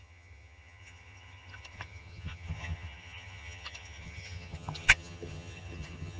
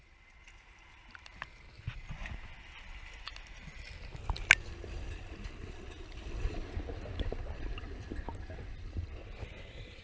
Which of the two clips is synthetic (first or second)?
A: first